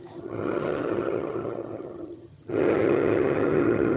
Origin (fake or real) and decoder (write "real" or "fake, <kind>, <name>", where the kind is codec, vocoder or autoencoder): fake, vocoder, HiFi-GAN